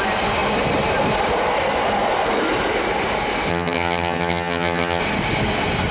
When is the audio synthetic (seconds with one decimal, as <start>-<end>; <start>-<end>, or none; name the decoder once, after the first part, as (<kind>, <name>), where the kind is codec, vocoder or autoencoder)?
3.5-5.0 (vocoder, HiFi-GAN)

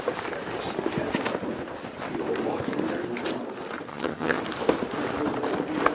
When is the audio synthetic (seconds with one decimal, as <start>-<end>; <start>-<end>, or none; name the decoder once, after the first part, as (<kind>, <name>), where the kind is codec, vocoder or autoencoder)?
3.9-4.4 (vocoder, HiFi-GAN)

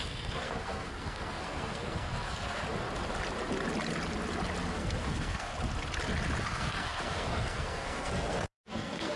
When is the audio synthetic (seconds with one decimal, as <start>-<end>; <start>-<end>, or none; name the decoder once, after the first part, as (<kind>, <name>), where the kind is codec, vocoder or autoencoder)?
0.0-2.6 (codec, SNAC); 4.7-5.5; 6.4-9.2

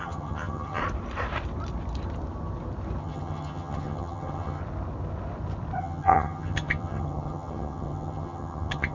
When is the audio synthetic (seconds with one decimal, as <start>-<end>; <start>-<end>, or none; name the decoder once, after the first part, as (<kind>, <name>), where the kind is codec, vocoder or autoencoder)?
0.0-0.8 (vocoder, HiFi-GAN); 3.0-4.6; 5.8-8.9